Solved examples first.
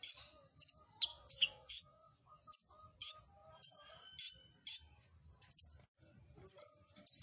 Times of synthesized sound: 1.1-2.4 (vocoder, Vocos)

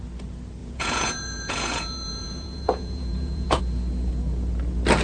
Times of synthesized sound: 0.6-3.6 (vocoder, Vocos)

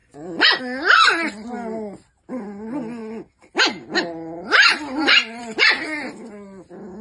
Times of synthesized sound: 0.0-0.6 (vocoder, Vocos)

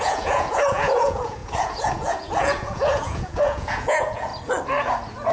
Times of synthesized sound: 0.0-4.3 (vocoder, Vocos)

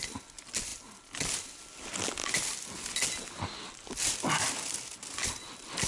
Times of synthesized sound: none

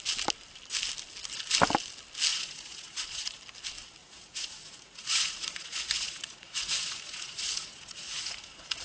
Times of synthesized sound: 2.3-3.4 (vocoder, Vocos); 4.0-8.8

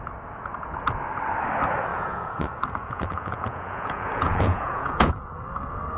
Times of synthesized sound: 1.9-5.2 (vocoder, Vocos)